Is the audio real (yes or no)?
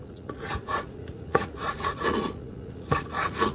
no